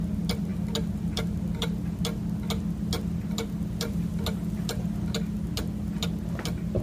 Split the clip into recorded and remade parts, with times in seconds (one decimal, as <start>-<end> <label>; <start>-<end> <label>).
0.0-6.8 recorded